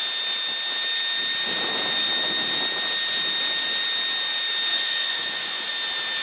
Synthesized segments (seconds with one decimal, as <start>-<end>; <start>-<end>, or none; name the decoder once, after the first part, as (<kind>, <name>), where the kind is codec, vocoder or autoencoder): 4.7-5.7 (vocoder, Vocos)